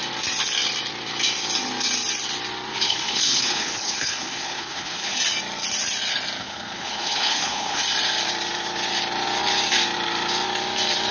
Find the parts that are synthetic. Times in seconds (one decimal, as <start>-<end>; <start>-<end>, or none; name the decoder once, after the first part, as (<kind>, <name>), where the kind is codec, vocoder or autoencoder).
2.7-5.2 (codec, HILCodec); 6.4-7.8

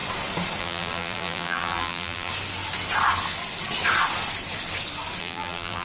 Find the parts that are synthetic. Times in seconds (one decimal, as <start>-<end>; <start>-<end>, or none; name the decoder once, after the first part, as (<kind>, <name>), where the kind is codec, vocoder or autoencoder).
0.6-2.3 (vocoder, BigVGAN v2); 5.2-5.8